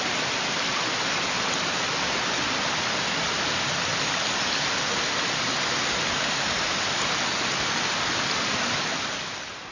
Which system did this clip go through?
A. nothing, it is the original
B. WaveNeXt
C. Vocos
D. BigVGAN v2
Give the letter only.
A